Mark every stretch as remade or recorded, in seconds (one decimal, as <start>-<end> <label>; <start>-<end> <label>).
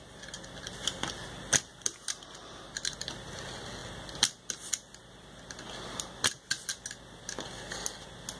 0.0-8.4 recorded